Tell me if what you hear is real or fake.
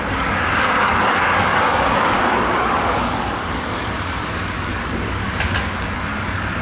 fake